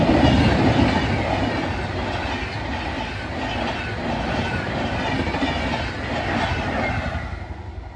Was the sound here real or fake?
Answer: real